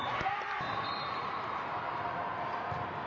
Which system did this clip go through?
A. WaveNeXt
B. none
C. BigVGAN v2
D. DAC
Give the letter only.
C